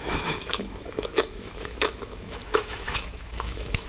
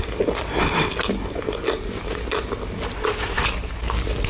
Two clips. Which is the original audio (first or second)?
second